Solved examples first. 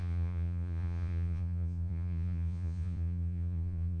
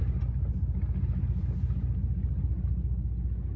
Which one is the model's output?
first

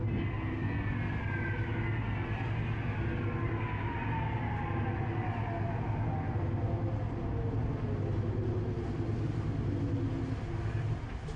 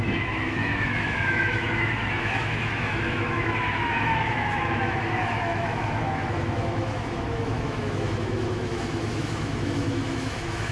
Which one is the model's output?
second